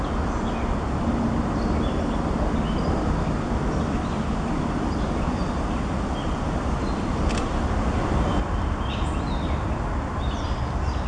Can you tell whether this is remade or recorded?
recorded